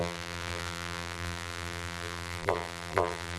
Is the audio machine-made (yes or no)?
yes